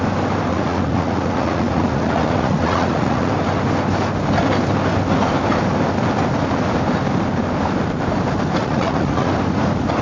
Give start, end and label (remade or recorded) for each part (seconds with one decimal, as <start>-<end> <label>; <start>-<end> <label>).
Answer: 0.0-0.5 recorded; 0.5-3.3 remade; 3.3-8.6 recorded; 8.6-9.3 remade; 9.3-10.0 recorded